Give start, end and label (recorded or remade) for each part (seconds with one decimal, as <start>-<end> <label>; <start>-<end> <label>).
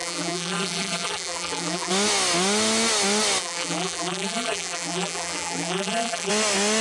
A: 0.0-1.9 remade; 1.9-3.4 recorded; 3.4-6.3 remade; 6.3-6.8 recorded